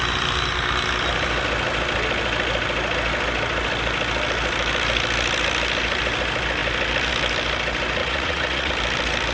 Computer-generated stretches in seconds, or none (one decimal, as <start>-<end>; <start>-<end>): 8.0-8.7